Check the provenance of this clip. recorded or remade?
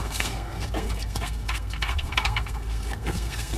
remade